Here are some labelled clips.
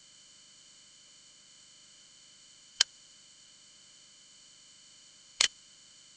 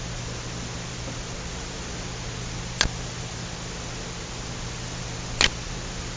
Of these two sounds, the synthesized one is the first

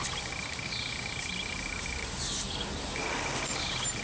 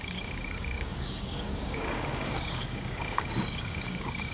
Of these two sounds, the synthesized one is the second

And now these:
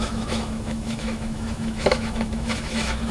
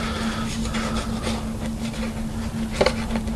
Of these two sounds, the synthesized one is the first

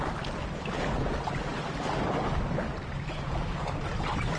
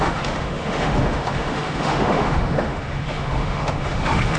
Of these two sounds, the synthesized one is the second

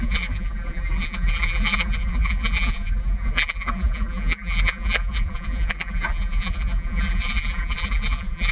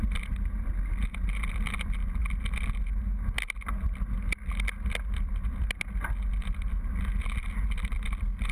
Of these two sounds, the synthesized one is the first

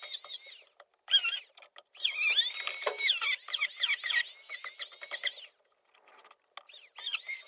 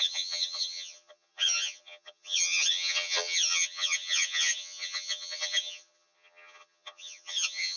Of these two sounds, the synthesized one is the second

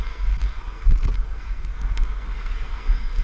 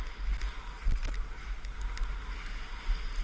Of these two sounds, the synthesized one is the first